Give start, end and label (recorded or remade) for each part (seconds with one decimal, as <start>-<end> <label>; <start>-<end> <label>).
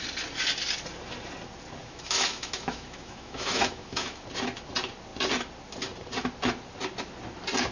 0.0-1.8 recorded; 1.8-4.2 remade; 4.2-7.7 recorded